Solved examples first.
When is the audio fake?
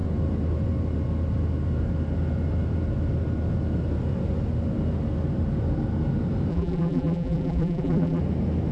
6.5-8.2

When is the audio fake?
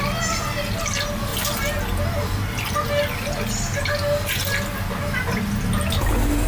none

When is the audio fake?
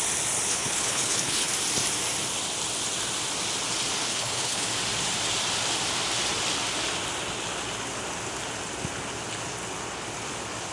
0.5-1.5; 4.1-4.7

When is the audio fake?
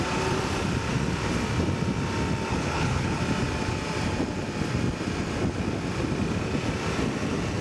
2.5-3.2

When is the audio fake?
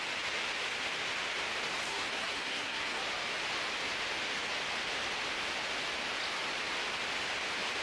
1.9-3.0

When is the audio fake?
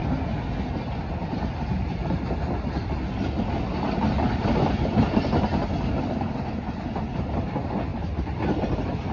none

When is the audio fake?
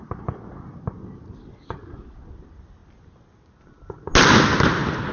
none